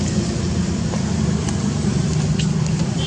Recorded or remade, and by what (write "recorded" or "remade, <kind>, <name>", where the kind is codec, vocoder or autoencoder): recorded